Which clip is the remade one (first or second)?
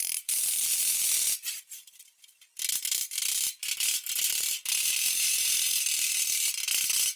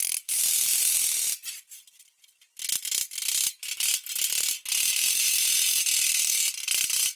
first